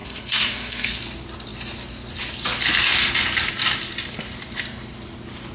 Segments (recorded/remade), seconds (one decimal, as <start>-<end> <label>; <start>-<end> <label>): 0.0-1.0 remade; 1.0-5.5 recorded